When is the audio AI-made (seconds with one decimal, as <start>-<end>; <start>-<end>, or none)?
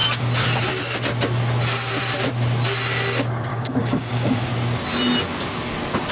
3.5-4.5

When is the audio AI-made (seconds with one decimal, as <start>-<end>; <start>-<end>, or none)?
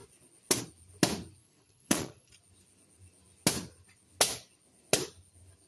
1.4-2.3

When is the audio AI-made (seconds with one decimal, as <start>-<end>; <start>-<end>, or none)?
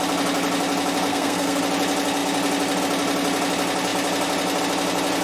1.1-1.6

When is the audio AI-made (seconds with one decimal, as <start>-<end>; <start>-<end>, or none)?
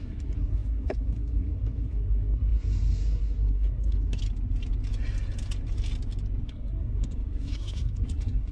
0.0-4.2; 6.4-8.5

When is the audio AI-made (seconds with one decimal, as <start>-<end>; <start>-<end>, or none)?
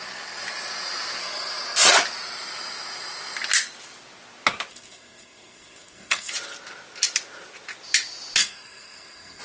4.7-6.3; 8.4-9.4